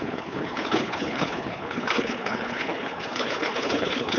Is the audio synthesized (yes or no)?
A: yes